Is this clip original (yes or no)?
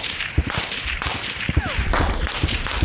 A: no